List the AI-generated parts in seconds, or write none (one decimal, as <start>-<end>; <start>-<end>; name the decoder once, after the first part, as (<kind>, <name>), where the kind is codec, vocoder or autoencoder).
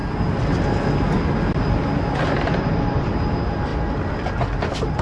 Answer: 2.9-5.0 (vocoder, BigVGAN v2)